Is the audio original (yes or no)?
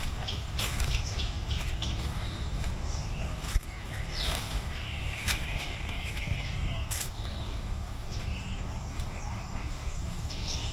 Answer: no